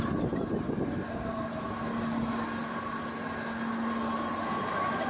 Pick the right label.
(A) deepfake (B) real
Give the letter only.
B